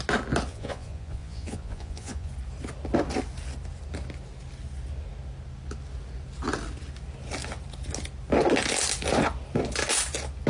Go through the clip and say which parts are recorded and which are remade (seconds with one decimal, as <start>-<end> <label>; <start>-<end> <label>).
0.0-0.5 recorded; 0.5-2.3 remade; 2.3-10.5 recorded

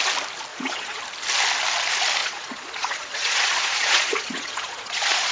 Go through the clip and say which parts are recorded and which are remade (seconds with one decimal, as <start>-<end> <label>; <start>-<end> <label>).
0.0-0.5 recorded; 0.5-1.0 remade; 1.0-2.2 recorded; 2.2-5.3 remade

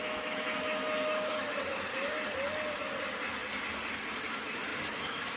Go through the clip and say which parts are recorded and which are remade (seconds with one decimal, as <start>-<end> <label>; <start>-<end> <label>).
0.0-1.9 remade; 1.9-4.2 recorded; 4.2-5.4 remade